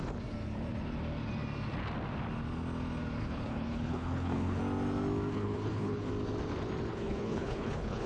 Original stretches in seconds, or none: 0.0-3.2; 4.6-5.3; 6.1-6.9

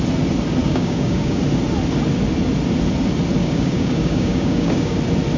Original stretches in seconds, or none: 0.0-0.6; 1.4-3.4; 5.0-5.4

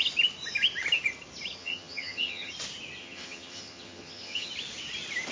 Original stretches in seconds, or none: 0.0-1.6; 2.5-3.0; 4.5-5.3

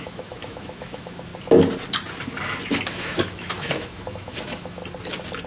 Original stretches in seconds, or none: 1.3-2.9; 4.8-5.5

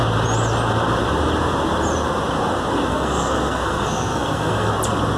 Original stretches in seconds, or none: 0.0-2.9; 4.7-5.2

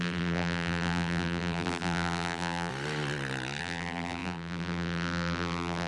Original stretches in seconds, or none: 2.7-3.6

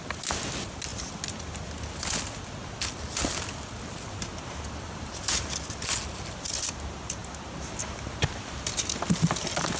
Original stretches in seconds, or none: 0.0-9.8

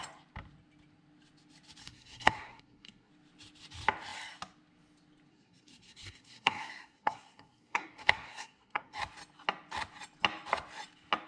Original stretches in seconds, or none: 0.0-1.8; 3.1-5.3; 9.0-11.3